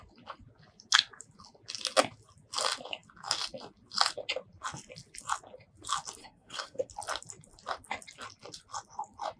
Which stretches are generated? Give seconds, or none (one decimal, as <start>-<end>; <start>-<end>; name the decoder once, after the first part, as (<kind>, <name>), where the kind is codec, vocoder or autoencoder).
6.2-6.9 (codec, SNAC)